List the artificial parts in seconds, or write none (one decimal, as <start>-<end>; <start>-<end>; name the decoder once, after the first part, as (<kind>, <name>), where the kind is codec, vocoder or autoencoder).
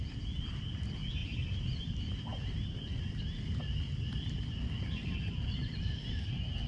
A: none